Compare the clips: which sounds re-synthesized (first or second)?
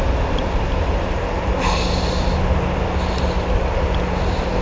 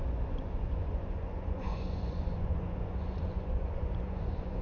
second